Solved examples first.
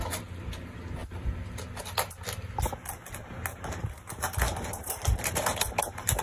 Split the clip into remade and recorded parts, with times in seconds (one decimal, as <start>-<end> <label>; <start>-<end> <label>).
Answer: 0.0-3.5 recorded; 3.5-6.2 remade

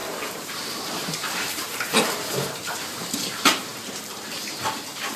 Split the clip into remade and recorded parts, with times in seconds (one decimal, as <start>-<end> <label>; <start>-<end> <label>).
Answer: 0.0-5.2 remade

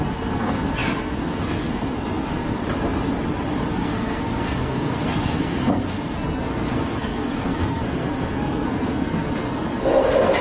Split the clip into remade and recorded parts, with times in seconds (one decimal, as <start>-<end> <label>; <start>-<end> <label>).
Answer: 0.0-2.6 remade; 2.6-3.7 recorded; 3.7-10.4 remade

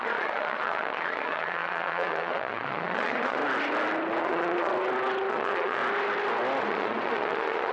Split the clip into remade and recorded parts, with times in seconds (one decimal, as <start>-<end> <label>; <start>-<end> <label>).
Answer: 0.0-3.4 remade; 3.4-4.2 recorded; 4.2-4.7 remade; 4.7-5.3 recorded; 5.3-5.8 remade; 5.8-6.6 recorded; 6.6-7.7 remade